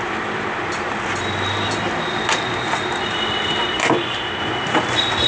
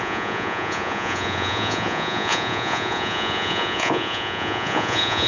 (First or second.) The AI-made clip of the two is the second